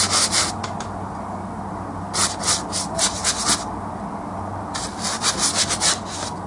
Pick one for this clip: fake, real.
real